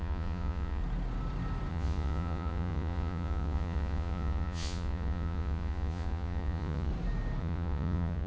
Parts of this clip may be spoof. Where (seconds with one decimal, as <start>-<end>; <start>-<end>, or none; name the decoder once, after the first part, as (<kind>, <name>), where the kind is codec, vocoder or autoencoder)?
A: 0.0-0.8 (vocoder, Vocos); 1.7-6.9; 7.4-8.3